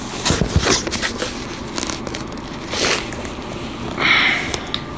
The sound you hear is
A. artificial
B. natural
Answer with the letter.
B